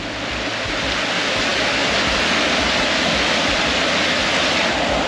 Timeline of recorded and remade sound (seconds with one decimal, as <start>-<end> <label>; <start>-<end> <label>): 0.0-5.1 recorded